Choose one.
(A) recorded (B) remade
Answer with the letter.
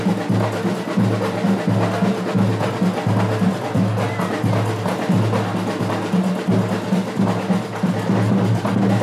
A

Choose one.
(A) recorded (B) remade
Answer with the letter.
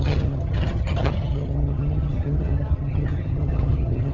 B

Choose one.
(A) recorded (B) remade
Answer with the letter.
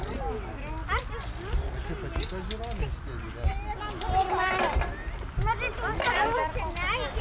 A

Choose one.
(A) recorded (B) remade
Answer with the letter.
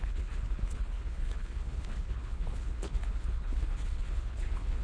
B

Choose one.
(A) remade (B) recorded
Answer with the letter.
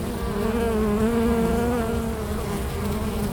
B